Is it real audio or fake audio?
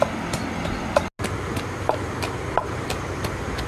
real